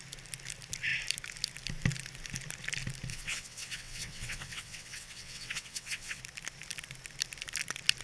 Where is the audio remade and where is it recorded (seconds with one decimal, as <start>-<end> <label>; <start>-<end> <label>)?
0.0-3.1 recorded; 3.1-6.2 remade; 6.2-8.0 recorded